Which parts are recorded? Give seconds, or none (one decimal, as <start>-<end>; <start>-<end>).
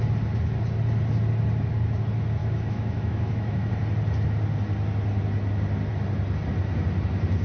0.0-2.4; 3.7-7.4